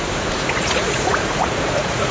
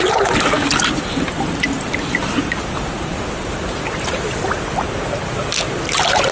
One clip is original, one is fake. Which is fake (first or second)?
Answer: first